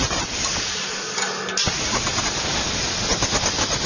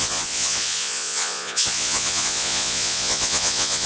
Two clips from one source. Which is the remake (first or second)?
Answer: second